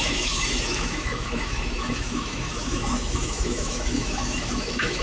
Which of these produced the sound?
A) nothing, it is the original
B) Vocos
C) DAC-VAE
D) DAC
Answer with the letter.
C